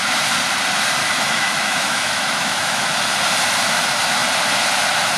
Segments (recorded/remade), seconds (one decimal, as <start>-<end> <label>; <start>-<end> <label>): 0.0-1.0 recorded; 1.0-2.9 remade; 2.9-5.2 recorded